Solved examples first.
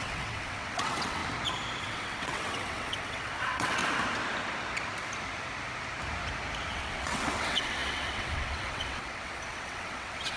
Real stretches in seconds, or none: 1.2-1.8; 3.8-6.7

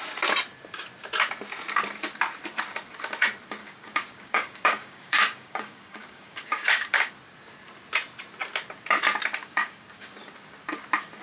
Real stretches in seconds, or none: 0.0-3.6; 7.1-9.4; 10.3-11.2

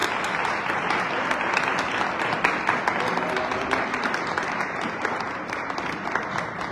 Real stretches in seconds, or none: 0.9-6.7

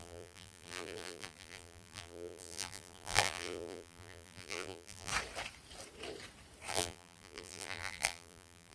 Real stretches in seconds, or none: 5.1-6.7

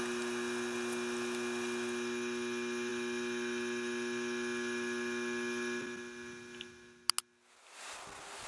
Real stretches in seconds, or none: 0.0-8.5

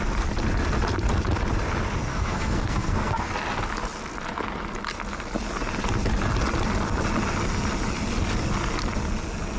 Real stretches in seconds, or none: 0.0-2.1; 3.3-9.6

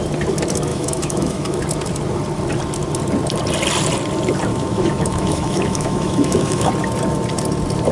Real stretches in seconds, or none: 0.0-0.7; 1.6-4.5; 6.7-7.9

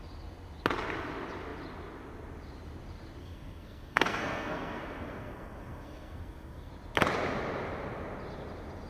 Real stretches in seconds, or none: 0.0-3.2; 6.7-8.9